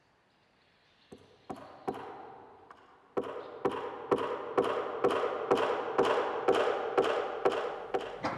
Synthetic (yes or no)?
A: no